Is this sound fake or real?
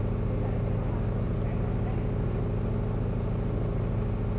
real